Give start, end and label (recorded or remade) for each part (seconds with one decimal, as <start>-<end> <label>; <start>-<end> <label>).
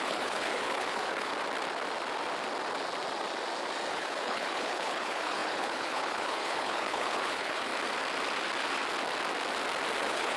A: 0.0-1.3 remade; 1.3-3.9 recorded; 3.9-7.7 remade; 7.7-10.0 recorded; 10.0-10.4 remade